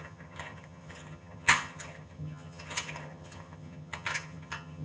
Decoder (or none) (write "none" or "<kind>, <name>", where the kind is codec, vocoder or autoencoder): vocoder, HiFi-GAN